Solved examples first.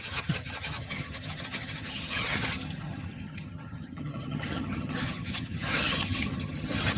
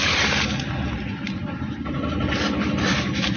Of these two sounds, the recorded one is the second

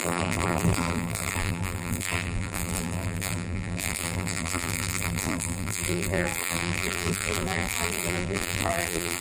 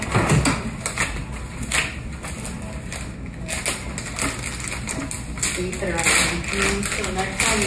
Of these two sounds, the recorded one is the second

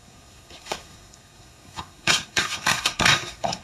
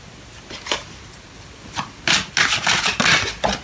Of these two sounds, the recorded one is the second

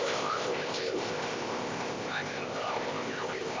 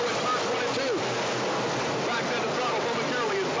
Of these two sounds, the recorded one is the second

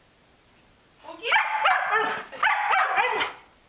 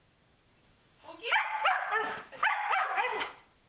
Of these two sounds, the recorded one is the first